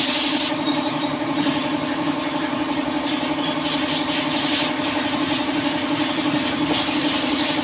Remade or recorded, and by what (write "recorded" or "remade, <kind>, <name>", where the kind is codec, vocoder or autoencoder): remade, vocoder, BigVGAN v2